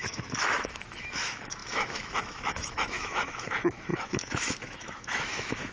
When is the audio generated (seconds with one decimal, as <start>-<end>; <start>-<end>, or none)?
0.0-5.7